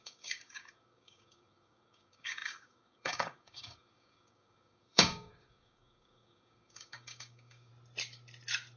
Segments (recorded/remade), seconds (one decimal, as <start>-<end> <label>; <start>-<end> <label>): 0.0-7.7 remade; 7.7-8.8 recorded